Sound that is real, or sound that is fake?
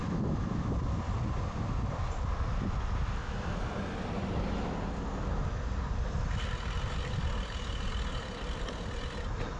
real